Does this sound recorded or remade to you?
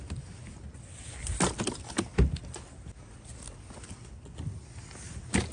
recorded